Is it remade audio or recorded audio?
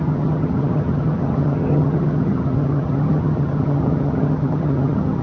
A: remade